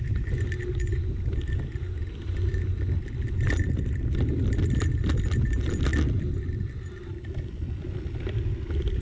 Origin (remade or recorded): recorded